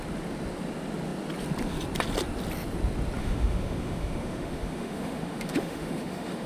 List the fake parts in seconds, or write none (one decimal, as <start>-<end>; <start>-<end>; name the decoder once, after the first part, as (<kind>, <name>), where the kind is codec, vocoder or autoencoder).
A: 3.2-6.5 (autoencoder, DAC-VAE)